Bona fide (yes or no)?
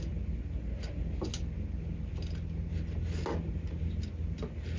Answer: yes